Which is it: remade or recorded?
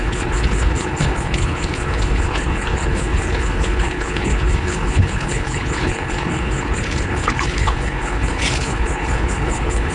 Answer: remade